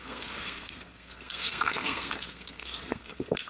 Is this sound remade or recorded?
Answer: remade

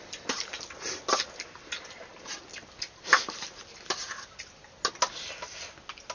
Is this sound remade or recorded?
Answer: recorded